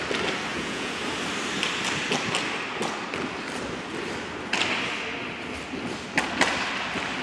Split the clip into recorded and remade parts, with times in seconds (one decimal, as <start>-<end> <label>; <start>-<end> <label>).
0.0-0.5 recorded; 0.5-1.0 remade; 1.0-7.2 recorded